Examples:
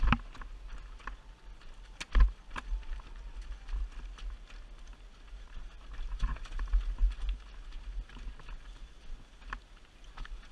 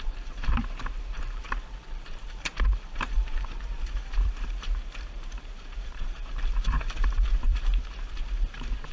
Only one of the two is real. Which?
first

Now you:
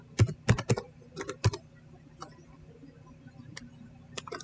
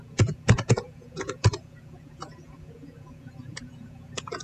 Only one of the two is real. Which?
first